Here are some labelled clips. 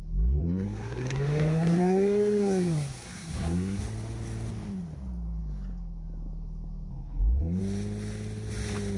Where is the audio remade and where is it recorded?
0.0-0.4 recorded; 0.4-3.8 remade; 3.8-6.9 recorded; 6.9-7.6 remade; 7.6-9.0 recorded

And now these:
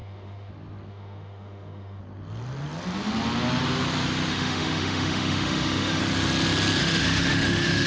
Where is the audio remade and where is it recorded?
0.0-0.5 remade; 0.5-0.9 recorded; 0.9-2.0 remade; 2.0-4.3 recorded; 4.3-6.0 remade; 6.0-6.8 recorded; 6.8-7.9 remade

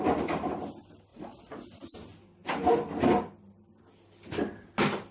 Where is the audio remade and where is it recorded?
0.0-1.1 recorded; 1.1-1.7 remade; 1.7-5.1 recorded

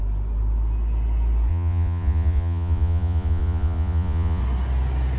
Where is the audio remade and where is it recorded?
0.0-1.5 recorded; 1.5-4.4 remade; 4.4-5.2 recorded